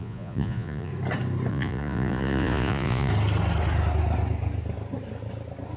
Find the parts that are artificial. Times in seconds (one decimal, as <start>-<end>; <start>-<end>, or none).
0.0-0.9; 1.5-3.1